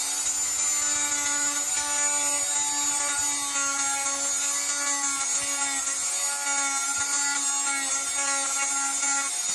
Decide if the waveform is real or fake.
real